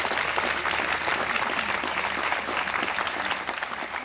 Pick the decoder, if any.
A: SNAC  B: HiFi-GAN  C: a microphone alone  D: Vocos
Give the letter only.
C